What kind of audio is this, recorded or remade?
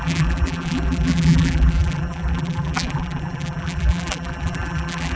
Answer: remade